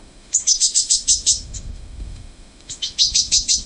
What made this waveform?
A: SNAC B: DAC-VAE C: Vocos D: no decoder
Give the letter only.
B